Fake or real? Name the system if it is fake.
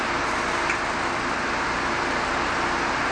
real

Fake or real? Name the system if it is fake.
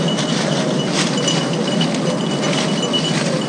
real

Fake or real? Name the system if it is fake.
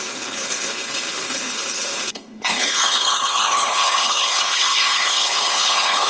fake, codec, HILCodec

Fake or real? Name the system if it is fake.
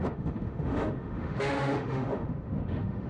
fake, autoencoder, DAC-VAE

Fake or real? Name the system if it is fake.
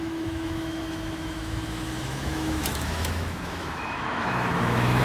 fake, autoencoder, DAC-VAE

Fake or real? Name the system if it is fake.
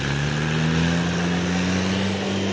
real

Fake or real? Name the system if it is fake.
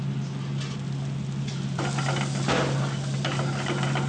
real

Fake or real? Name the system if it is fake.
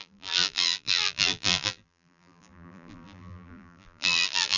fake, vocoder, BigVGAN v2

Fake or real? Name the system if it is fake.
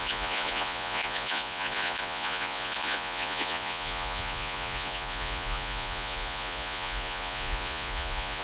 fake, vocoder, Vocos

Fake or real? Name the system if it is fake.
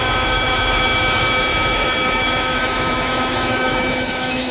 fake, autoencoder, DAC-VAE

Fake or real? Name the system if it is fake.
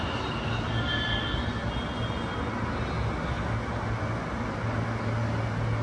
real